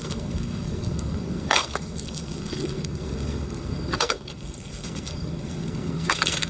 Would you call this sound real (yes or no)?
no